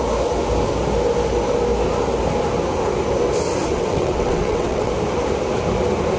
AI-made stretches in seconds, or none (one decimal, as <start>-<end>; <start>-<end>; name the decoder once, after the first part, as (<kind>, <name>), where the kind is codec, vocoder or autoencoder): 3.7-4.9 (vocoder, WaveNeXt)